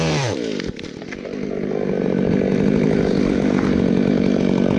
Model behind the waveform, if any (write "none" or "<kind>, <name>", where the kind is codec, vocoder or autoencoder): vocoder, BigVGAN v2